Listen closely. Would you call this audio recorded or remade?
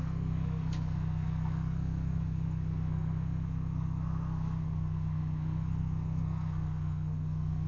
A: remade